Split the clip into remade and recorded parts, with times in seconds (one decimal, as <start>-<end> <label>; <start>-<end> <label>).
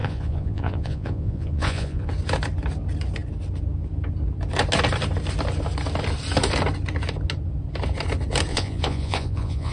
0.0-2.1 remade; 2.1-8.5 recorded; 8.5-9.7 remade